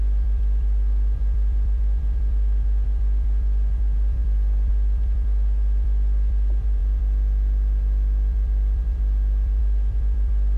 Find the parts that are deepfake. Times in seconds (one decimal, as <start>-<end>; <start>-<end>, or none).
0.0-10.6